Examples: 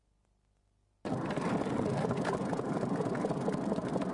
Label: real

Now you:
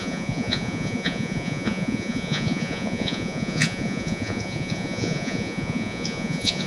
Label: fake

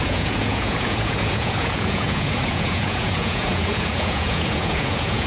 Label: fake